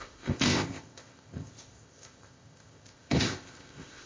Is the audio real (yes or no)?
no